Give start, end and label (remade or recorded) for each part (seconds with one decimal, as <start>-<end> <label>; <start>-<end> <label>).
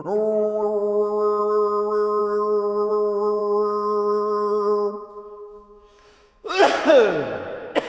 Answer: 0.0-2.2 recorded; 2.2-2.9 remade; 2.9-3.4 recorded; 3.4-7.9 remade